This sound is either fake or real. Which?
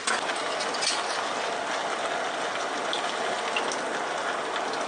real